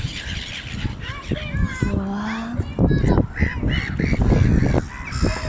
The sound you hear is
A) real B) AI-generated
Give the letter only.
A